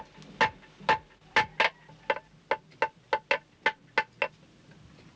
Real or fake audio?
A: real